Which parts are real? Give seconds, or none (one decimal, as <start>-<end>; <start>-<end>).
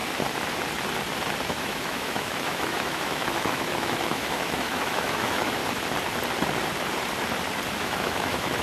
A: 0.0-1.5; 5.6-7.7